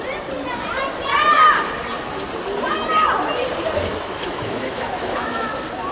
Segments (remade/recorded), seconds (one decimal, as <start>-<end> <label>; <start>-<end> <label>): 0.0-3.9 recorded; 3.9-5.5 remade; 5.5-5.9 recorded